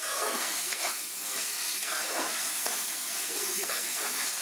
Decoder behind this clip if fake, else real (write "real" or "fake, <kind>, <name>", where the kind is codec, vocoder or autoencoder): fake, codec, SNAC